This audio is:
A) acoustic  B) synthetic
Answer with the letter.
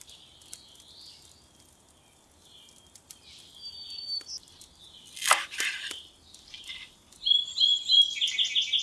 A